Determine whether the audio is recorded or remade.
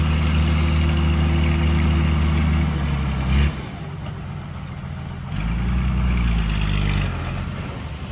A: recorded